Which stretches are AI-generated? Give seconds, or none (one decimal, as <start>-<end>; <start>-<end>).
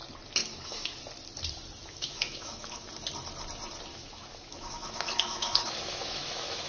0.4-1.0; 1.8-2.9; 3.9-6.7